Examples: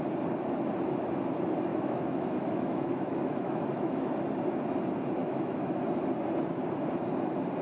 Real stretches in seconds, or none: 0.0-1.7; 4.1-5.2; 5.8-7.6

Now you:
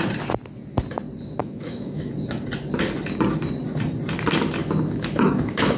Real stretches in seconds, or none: 0.0-1.4; 2.1-4.6

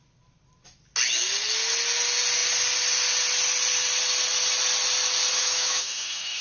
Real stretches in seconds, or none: 0.0-5.4

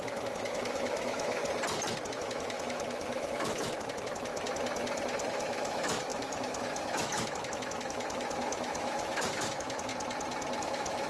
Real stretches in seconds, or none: 1.4-2.1; 4.3-5.3; 9.9-10.6

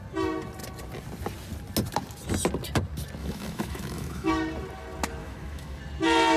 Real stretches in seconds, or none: 0.0-3.2; 4.3-5.2; 5.8-6.4

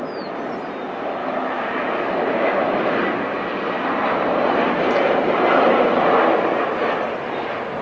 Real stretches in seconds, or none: 0.0-1.2; 2.6-7.8

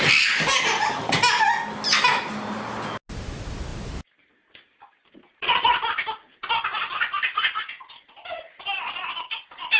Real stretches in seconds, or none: 0.0-9.8